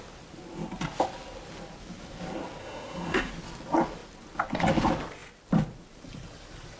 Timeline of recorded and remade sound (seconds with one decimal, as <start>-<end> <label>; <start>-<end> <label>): 0.0-2.6 recorded; 2.6-3.3 remade; 3.3-6.8 recorded